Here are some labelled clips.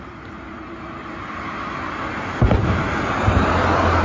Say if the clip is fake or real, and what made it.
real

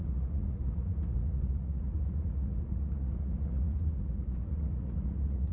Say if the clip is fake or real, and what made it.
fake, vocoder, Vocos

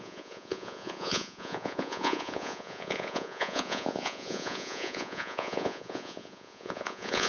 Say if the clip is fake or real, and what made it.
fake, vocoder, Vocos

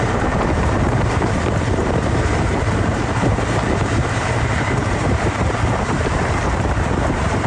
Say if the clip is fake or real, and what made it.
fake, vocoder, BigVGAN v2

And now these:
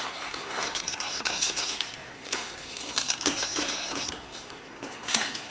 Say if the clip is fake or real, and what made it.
fake, codec, SNAC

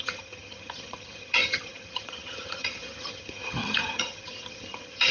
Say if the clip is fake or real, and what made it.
fake, vocoder, HiFi-GAN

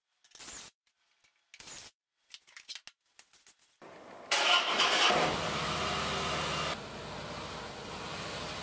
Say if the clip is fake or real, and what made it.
real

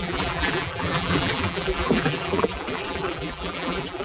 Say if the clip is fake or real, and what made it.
fake, vocoder, BigVGAN v2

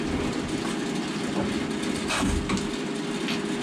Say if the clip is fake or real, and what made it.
real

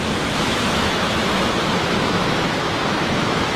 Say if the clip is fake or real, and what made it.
fake, autoencoder, DAC-VAE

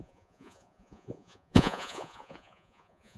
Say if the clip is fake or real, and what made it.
fake, vocoder, Vocos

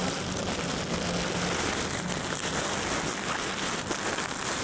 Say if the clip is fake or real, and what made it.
real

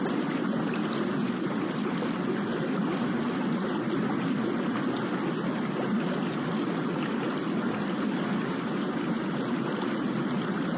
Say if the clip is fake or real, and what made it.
real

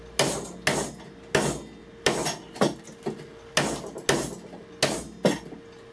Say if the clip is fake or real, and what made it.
real